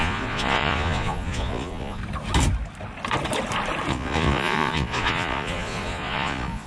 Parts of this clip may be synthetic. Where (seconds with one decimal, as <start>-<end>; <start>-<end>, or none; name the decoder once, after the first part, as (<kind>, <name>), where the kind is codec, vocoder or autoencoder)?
0.0-2.0 (vocoder, Vocos); 3.9-6.7